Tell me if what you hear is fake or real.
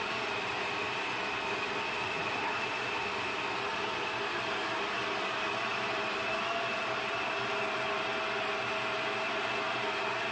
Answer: real